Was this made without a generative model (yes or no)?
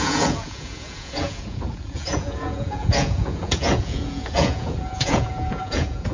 no